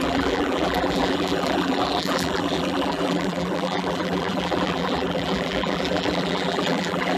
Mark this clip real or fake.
fake